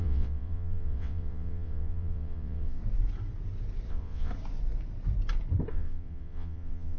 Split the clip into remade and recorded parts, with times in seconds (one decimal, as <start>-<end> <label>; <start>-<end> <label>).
0.0-2.8 remade; 2.8-3.9 recorded; 3.9-4.3 remade; 4.3-5.7 recorded; 5.7-7.0 remade

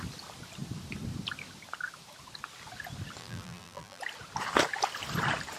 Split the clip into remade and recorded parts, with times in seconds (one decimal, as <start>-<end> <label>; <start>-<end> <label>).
0.0-3.2 recorded; 3.2-4.0 remade; 4.0-5.6 recorded

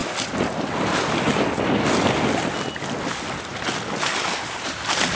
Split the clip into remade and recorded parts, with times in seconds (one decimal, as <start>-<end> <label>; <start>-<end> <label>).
0.0-5.2 recorded

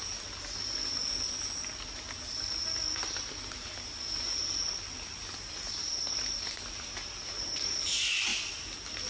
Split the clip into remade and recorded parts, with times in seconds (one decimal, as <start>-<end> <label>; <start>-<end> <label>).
0.0-9.1 recorded

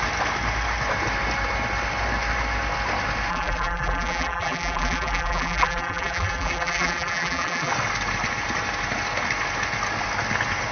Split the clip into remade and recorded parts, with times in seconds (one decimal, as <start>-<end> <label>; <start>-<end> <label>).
0.0-3.3 recorded; 3.3-7.7 remade; 7.7-10.7 recorded

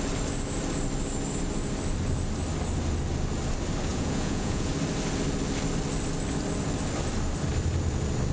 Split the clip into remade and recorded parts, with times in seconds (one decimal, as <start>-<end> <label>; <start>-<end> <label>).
0.0-3.9 recorded; 3.9-4.7 remade; 4.7-8.3 recorded